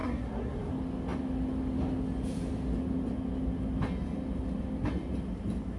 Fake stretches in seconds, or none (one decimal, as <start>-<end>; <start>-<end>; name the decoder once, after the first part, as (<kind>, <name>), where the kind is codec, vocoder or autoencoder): 0.0-0.7 (codec, SNAC)